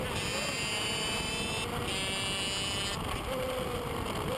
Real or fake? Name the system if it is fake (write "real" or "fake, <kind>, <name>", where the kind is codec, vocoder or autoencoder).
real